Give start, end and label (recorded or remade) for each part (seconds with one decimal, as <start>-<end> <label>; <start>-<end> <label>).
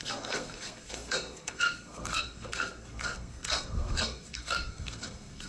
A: 0.0-5.5 remade